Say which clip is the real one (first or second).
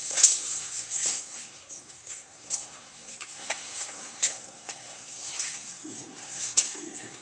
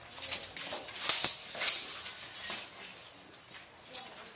second